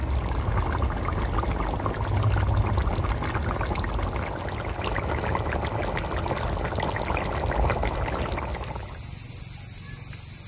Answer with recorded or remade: recorded